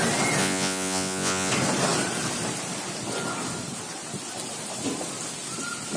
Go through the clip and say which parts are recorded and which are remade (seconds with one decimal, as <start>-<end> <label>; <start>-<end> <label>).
0.0-0.4 recorded; 0.4-1.5 remade; 1.5-6.0 recorded